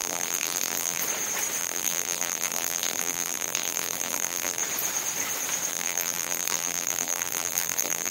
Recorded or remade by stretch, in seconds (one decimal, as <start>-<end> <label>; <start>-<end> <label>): 0.0-1.0 remade; 1.0-1.6 recorded; 1.6-4.6 remade; 4.6-5.7 recorded; 5.7-8.1 remade

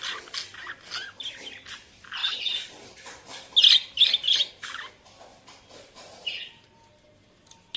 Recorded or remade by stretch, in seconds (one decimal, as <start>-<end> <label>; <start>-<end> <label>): 0.0-5.3 recorded; 5.3-6.7 remade; 6.7-7.8 recorded

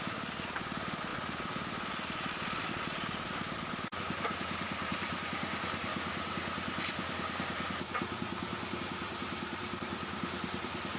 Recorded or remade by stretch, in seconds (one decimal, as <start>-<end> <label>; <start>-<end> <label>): 0.0-1.1 remade; 1.1-2.7 recorded; 2.7-5.9 remade; 5.9-8.8 recorded; 8.8-11.0 remade

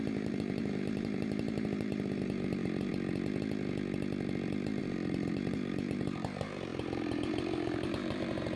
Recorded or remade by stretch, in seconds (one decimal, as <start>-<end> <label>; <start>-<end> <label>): 0.0-2.9 remade; 2.9-4.8 recorded; 4.8-8.6 remade

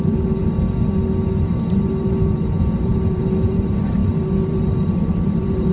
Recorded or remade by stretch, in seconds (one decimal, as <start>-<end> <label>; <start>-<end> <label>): 0.0-0.4 remade; 0.4-1.4 recorded; 1.4-5.7 remade

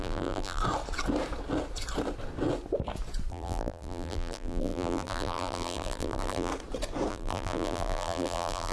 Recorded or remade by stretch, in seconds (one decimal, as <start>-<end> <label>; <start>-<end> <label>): 0.0-0.6 remade; 0.6-3.3 recorded; 3.3-6.5 remade; 6.5-7.1 recorded; 7.1-8.7 remade